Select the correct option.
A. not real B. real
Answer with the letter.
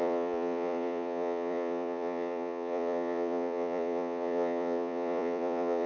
A